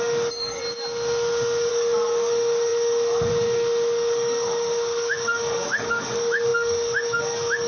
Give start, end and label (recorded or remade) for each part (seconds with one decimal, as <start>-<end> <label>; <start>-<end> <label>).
0.0-0.6 remade; 0.6-1.7 recorded; 1.7-7.7 remade